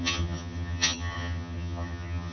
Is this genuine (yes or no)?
no